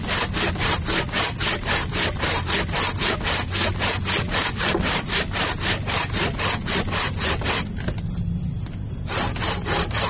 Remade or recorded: recorded